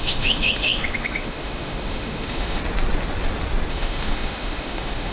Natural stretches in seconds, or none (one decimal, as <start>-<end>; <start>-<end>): 2.6-3.7